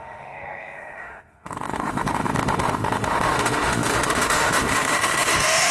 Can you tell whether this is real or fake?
fake